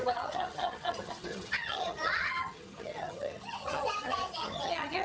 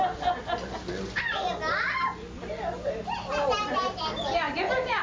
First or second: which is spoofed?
first